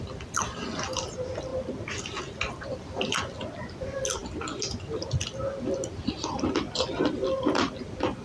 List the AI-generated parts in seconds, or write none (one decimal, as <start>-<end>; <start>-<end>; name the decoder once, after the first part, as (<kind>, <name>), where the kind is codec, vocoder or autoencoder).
1.5-2.2 (vocoder, BigVGAN v2); 4.2-7.1